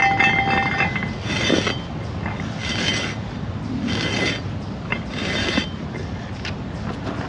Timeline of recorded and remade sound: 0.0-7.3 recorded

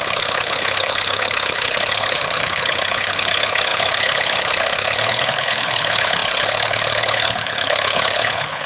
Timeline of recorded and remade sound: 0.0-8.7 remade

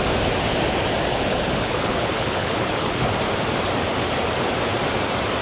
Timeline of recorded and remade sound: 0.0-1.1 recorded; 1.1-3.1 remade; 3.1-5.4 recorded

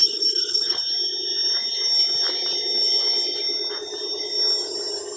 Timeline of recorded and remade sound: 0.0-0.8 remade; 0.8-5.2 recorded

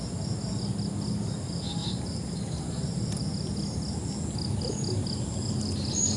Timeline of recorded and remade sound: 0.0-6.2 recorded

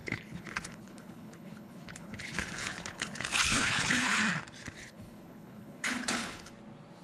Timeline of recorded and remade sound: 0.0-4.2 remade; 4.2-4.8 recorded; 4.8-6.5 remade; 6.5-7.0 recorded